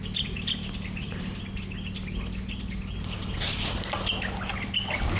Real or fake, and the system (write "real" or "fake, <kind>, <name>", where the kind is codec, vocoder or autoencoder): real